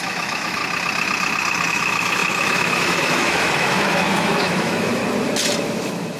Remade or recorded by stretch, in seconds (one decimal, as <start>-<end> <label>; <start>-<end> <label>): 0.0-0.6 remade; 0.6-1.7 recorded; 1.7-5.0 remade; 5.0-5.6 recorded; 5.6-6.2 remade